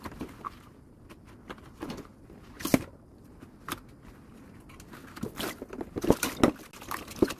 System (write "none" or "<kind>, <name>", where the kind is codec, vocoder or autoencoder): none